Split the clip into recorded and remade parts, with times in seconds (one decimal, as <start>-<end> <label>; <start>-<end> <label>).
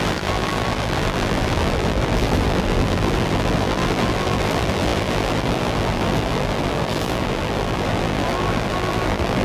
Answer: 0.0-9.4 remade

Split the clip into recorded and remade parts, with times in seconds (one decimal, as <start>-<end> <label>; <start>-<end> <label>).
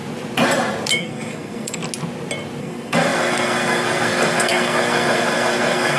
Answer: 0.0-0.9 recorded; 0.9-1.8 remade; 1.8-2.6 recorded; 2.6-6.0 remade